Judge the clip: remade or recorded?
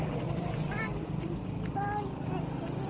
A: remade